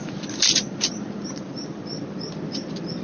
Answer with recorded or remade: recorded